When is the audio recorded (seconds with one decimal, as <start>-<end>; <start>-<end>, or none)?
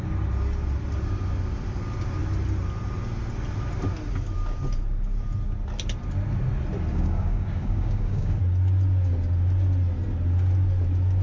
0.0-6.9; 8.4-11.2